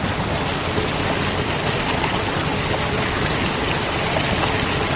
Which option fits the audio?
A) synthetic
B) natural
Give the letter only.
B